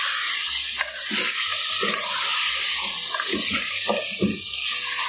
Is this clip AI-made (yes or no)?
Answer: no